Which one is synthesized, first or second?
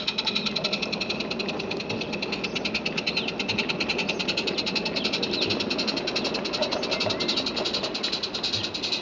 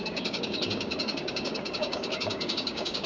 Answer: second